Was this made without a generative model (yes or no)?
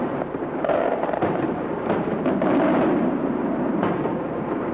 no